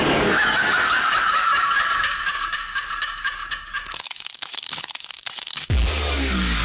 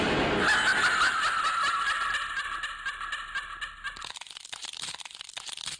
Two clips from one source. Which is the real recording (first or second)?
second